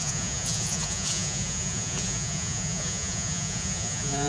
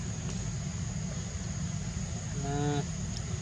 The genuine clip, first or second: second